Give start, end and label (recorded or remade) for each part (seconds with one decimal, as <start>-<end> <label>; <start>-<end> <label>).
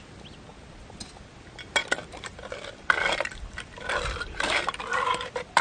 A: 0.0-1.8 recorded; 1.8-5.6 remade